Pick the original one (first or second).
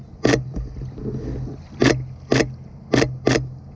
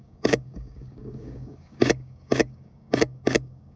first